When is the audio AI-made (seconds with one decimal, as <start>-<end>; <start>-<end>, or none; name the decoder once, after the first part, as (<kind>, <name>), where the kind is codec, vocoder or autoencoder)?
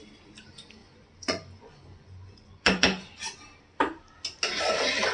0.8-3.1 (vocoder, Vocos)